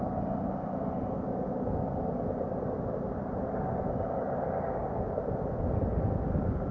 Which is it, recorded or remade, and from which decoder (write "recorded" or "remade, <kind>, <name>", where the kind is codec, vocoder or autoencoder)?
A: recorded